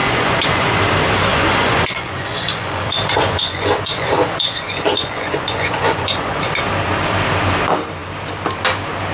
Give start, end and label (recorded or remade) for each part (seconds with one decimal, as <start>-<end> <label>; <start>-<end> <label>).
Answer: 0.0-0.8 remade; 0.8-1.3 recorded; 1.3-6.4 remade; 6.4-9.1 recorded